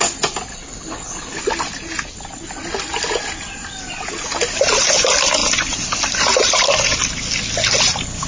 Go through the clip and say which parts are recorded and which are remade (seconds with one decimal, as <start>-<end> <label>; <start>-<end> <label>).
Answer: 0.0-0.5 recorded; 0.5-1.4 remade; 1.4-8.3 recorded